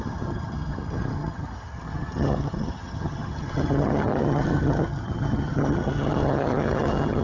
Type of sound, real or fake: fake